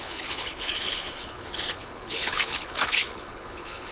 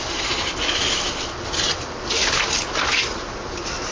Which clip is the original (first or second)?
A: second